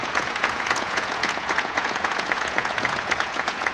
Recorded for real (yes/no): no